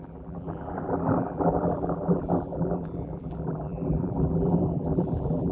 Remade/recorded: remade